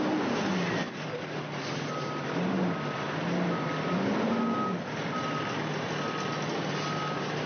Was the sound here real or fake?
real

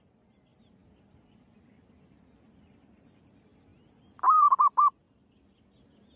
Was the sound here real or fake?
real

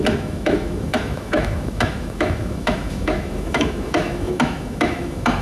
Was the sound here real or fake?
fake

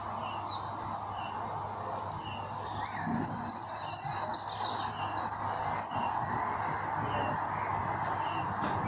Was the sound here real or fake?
real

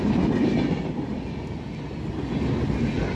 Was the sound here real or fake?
real